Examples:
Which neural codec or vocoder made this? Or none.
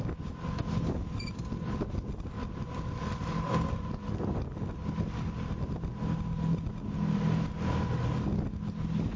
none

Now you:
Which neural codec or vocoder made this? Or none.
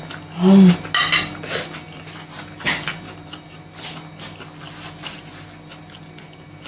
none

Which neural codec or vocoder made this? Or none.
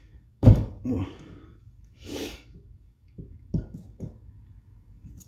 codec, DAC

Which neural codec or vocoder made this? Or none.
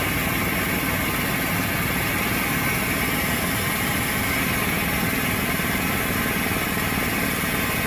none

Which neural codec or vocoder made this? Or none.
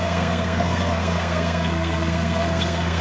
codec, SNAC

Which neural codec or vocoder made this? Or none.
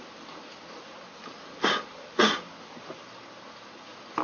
none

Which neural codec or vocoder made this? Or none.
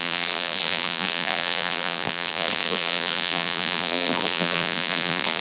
vocoder, BigVGAN v2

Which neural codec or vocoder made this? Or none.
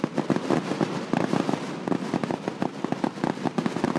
none